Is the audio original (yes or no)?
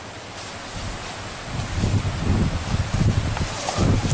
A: yes